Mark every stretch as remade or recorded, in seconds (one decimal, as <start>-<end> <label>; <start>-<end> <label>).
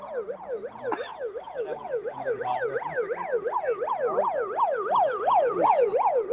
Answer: 0.0-1.1 recorded; 1.1-2.4 remade; 2.4-6.3 recorded